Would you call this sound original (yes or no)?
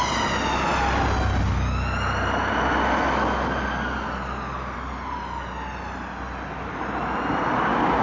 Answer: yes